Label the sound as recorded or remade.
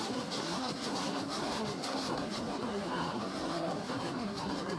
remade